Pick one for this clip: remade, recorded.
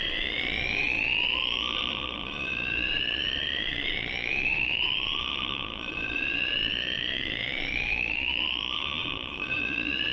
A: remade